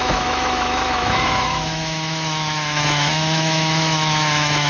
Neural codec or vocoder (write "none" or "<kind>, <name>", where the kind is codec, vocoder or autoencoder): autoencoder, DAC-VAE